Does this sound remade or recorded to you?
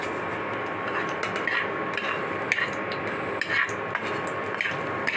recorded